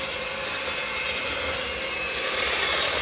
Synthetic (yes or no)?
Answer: no